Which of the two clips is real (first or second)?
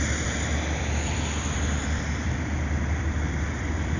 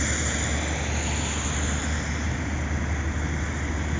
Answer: second